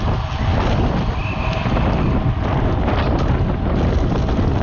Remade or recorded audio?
recorded